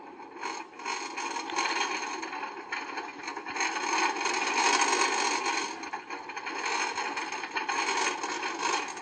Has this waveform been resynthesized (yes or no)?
no